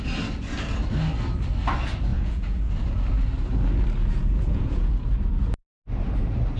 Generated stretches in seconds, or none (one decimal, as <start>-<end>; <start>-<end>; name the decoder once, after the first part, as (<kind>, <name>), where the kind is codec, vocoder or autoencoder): 2.1-2.7 (vocoder, Vocos); 4.0-4.9